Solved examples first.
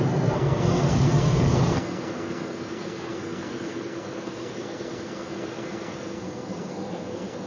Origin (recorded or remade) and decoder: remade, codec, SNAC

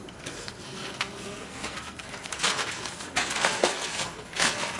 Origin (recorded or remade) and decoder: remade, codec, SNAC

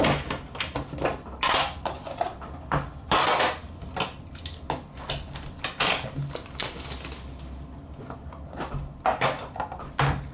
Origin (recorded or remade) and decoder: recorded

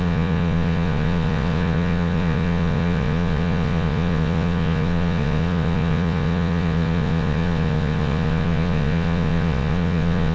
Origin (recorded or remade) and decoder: remade, vocoder, Vocos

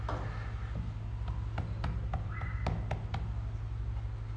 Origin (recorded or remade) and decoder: recorded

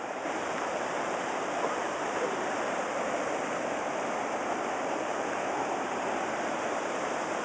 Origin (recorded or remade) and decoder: remade, vocoder, BigVGAN v2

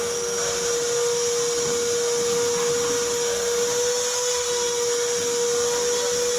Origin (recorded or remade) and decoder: recorded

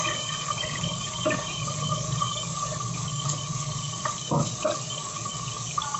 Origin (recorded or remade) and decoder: remade, codec, DAC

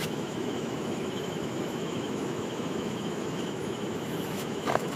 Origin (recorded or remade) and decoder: remade, autoencoder, DAC-VAE